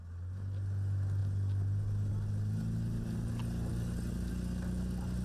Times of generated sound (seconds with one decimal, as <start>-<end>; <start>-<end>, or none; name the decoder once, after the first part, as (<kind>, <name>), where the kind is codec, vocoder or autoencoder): none